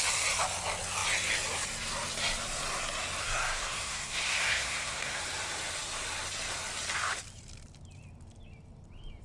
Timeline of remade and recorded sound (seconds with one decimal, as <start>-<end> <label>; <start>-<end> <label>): 0.0-3.2 recorded; 3.2-5.2 remade; 5.2-9.2 recorded